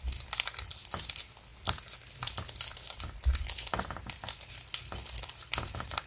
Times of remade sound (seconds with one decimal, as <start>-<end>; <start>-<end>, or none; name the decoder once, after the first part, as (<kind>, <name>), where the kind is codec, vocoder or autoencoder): none